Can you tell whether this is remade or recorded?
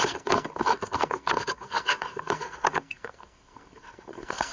remade